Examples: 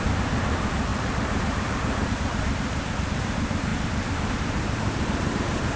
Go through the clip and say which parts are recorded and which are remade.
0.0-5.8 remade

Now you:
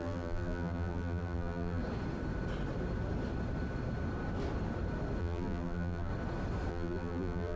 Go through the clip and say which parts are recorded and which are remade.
0.0-1.8 remade; 1.8-5.2 recorded; 5.2-6.1 remade; 6.1-6.7 recorded; 6.7-7.6 remade

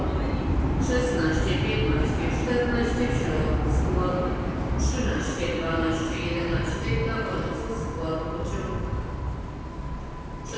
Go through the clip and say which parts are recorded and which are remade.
0.0-10.6 recorded

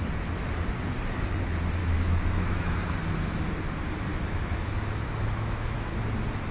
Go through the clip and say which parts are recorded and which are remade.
0.0-1.8 recorded; 1.8-2.8 remade; 2.8-4.1 recorded; 4.1-6.0 remade; 6.0-6.5 recorded

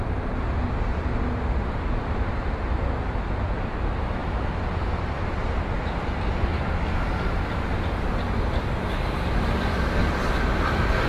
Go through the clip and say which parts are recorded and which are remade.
0.0-10.0 recorded; 10.0-11.1 remade

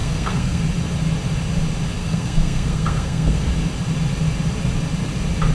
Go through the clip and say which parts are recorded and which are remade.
0.0-0.6 remade; 0.6-2.0 recorded; 2.0-3.5 remade; 3.5-5.5 recorded

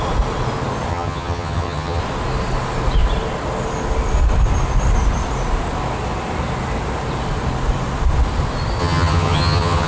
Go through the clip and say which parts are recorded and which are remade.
0.0-0.9 recorded; 0.9-2.0 remade; 2.0-8.8 recorded; 8.8-9.9 remade

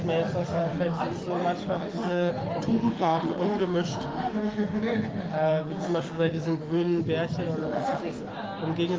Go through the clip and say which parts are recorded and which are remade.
0.0-0.4 recorded; 0.4-1.0 remade; 1.0-1.6 recorded; 1.6-2.3 remade; 2.3-2.7 recorded; 2.7-7.0 remade; 7.0-7.6 recorded; 7.6-8.2 remade; 8.2-9.0 recorded